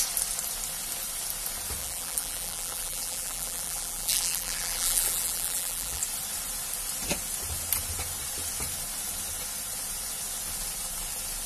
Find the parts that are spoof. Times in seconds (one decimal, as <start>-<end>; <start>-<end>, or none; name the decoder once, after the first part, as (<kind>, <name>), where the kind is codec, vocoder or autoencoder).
1.8-6.0 (vocoder, BigVGAN v2)